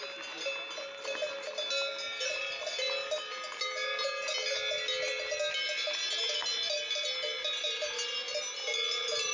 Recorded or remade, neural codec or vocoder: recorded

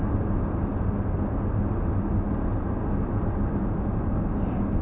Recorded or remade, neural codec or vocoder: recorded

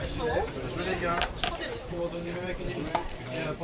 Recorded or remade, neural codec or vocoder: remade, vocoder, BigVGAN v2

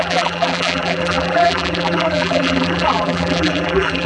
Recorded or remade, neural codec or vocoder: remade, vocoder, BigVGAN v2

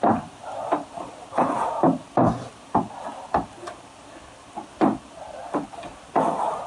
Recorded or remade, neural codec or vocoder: remade, vocoder, BigVGAN v2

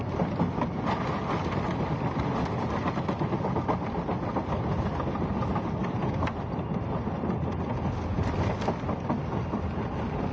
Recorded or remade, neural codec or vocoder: recorded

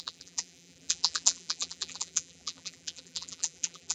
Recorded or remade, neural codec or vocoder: remade, vocoder, BigVGAN v2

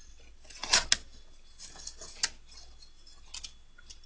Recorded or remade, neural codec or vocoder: recorded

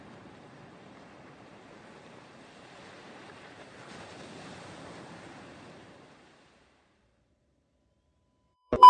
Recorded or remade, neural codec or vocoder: remade, vocoder, BigVGAN v2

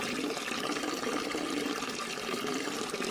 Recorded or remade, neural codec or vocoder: recorded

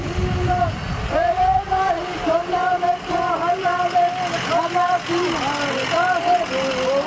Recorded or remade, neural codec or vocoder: recorded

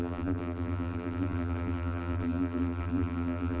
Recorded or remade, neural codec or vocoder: remade, vocoder, BigVGAN v2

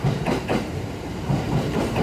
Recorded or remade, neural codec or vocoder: remade, vocoder, BigVGAN v2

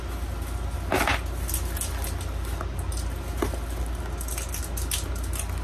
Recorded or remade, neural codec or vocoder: recorded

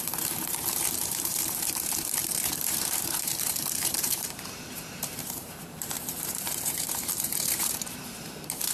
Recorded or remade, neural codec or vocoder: remade, vocoder, BigVGAN v2